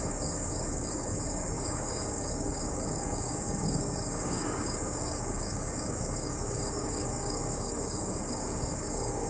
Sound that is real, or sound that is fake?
fake